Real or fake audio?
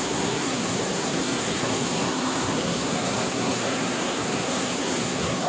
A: fake